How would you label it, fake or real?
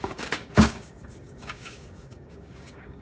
fake